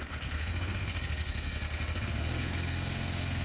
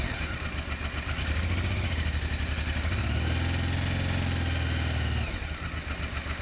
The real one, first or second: second